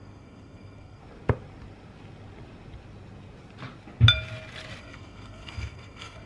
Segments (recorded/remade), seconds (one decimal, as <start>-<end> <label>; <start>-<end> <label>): 0.0-1.0 remade; 1.0-4.8 recorded; 4.8-6.3 remade